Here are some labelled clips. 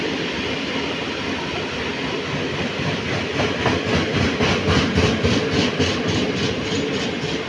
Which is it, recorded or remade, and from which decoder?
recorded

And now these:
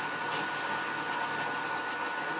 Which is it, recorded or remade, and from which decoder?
recorded